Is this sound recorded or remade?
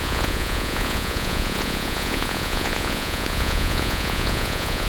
remade